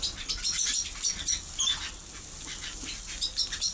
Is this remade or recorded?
recorded